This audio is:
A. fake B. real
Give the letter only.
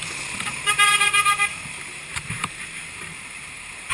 A